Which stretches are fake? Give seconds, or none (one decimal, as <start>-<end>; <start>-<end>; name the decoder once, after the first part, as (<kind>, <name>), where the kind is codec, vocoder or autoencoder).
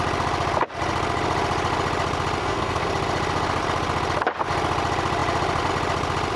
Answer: 2.4-2.9 (codec, SNAC)